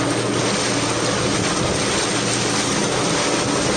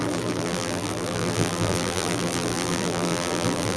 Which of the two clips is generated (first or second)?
second